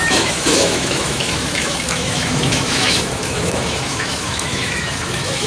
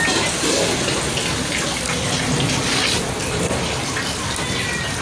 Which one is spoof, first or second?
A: first